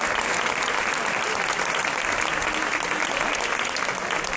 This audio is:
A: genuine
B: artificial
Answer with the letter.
A